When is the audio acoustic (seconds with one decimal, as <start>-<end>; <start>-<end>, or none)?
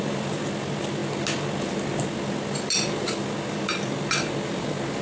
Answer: 0.0-5.0